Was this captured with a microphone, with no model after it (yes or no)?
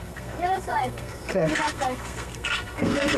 no